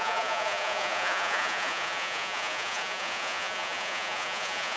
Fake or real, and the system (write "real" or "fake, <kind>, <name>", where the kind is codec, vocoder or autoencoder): fake, vocoder, Vocos